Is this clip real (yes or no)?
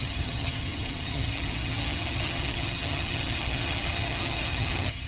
no